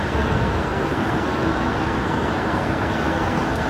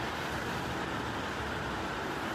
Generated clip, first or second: first